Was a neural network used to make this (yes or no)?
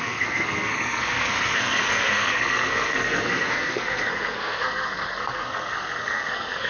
yes